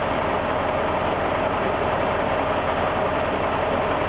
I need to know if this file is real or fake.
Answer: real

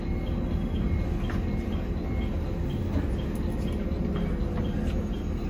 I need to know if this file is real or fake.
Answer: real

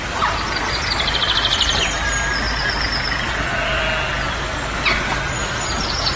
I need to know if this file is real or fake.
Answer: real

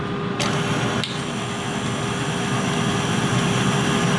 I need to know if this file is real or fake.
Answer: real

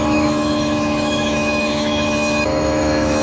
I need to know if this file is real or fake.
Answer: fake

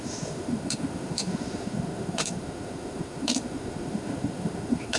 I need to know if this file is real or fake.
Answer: fake